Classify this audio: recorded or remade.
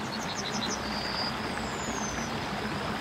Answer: recorded